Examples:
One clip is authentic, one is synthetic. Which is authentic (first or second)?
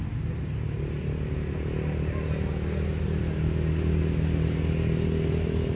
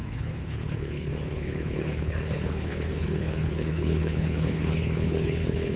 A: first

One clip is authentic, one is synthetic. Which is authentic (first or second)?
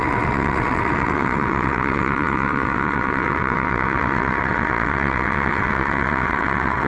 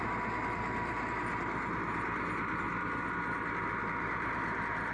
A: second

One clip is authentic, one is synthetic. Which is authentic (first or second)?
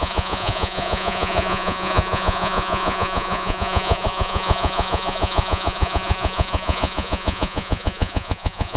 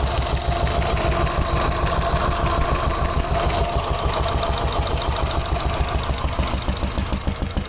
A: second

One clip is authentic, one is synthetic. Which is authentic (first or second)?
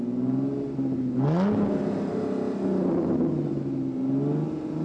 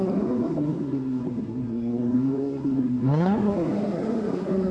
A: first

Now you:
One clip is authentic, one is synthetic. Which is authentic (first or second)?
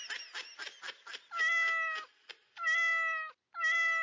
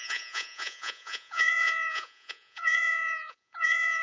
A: first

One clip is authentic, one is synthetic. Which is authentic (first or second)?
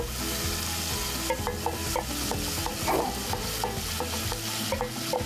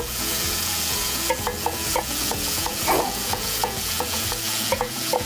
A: first